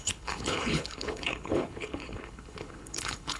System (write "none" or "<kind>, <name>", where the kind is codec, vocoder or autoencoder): codec, HILCodec